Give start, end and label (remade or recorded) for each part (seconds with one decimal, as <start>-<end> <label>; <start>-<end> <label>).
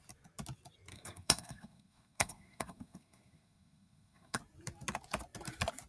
0.0-0.9 recorded; 0.9-4.4 remade; 4.4-5.9 recorded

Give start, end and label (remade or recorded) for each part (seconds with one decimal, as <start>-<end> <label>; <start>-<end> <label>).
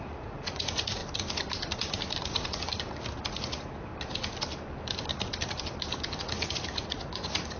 0.0-1.0 remade; 1.0-2.2 recorded; 2.2-2.7 remade; 2.7-3.2 recorded; 3.2-3.9 remade; 3.9-6.2 recorded; 6.2-7.6 remade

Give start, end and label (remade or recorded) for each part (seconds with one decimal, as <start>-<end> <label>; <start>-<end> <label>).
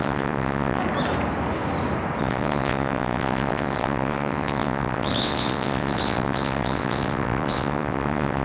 0.0-0.8 remade; 0.8-2.2 recorded; 2.2-8.4 remade